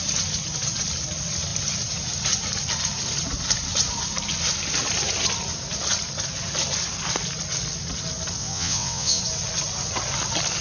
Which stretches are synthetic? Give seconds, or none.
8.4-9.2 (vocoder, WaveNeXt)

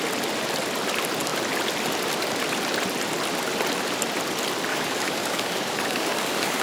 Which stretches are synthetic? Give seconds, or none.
4.7-6.6 (codec, DAC)

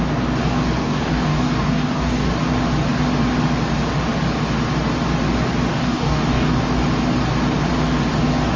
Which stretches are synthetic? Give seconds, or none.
0.8-2.3 (codec, DAC); 5.7-6.6

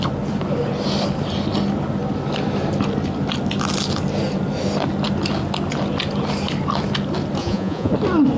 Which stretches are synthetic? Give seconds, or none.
7.4-7.9 (vocoder, Vocos)